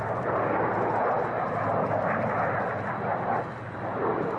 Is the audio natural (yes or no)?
yes